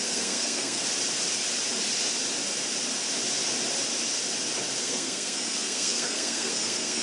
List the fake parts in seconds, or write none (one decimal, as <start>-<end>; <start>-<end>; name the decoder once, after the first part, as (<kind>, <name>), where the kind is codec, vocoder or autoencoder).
0.0-0.8 (codec, SNAC); 4.8-7.0